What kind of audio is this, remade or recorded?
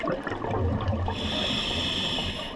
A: recorded